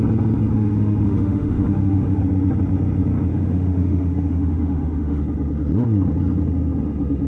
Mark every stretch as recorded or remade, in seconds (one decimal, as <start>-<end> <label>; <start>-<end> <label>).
0.0-0.5 recorded; 0.5-2.2 remade; 2.2-3.3 recorded; 3.3-5.2 remade; 5.2-7.3 recorded